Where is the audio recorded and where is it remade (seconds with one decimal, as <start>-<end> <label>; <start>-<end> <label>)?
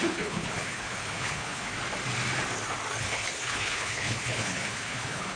0.0-1.7 remade; 1.7-3.0 recorded; 3.0-5.4 remade